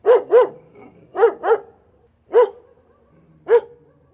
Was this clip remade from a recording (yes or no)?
no